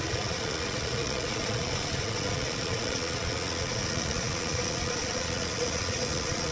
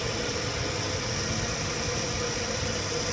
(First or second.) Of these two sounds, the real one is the second